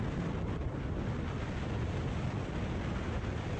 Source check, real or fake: real